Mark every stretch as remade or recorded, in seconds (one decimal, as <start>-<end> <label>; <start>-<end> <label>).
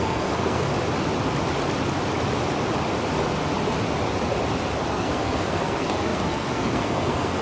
0.0-0.7 remade; 0.7-4.9 recorded; 4.9-7.4 remade